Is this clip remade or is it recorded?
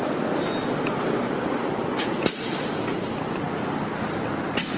recorded